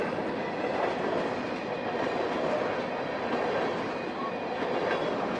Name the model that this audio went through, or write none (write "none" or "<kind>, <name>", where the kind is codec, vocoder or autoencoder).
none